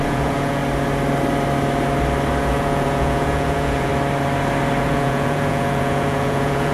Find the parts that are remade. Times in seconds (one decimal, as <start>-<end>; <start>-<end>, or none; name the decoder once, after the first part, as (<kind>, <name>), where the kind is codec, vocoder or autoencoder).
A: 0.0-0.6 (vocoder, Vocos); 2.4-3.9; 4.8-6.7